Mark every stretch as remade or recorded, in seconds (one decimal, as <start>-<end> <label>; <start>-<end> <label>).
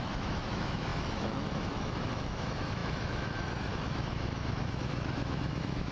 0.0-5.9 remade